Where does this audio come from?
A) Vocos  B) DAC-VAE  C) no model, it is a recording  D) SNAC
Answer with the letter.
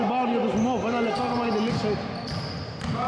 C